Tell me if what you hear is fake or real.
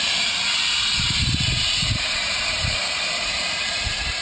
fake